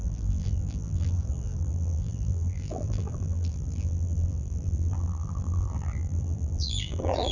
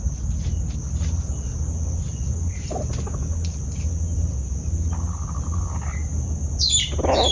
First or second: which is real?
second